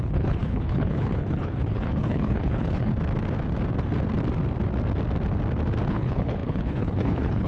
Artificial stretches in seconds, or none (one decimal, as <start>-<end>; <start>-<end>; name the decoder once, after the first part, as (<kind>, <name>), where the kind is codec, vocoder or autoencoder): 0.0-2.9 (codec, HILCodec); 5.9-7.5